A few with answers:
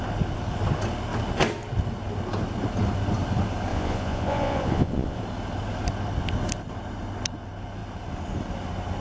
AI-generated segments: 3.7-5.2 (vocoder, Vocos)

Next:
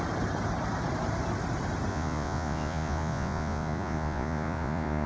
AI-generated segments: 1.9-5.1 (vocoder, Vocos)

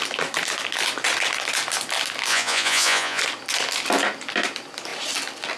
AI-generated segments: 2.3-3.2 (vocoder, Vocos)